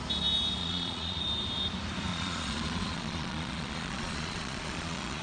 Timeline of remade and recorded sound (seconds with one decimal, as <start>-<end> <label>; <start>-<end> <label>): 0.0-0.6 recorded; 0.6-1.2 remade; 1.2-2.1 recorded; 2.1-5.2 remade